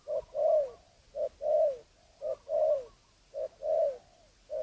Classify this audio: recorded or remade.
recorded